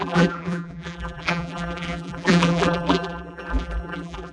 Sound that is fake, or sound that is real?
fake